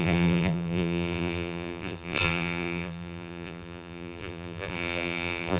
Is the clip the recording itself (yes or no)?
no